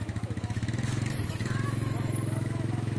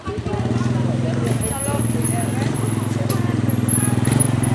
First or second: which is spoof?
first